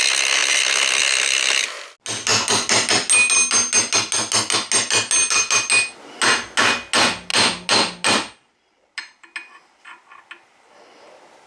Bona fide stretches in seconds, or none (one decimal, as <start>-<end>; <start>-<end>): 0.0-11.5